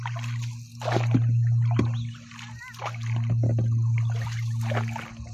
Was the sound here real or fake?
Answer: real